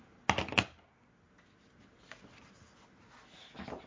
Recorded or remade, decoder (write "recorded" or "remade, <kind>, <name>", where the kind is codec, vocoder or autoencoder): recorded